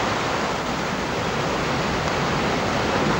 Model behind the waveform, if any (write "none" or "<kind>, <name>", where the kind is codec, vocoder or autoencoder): none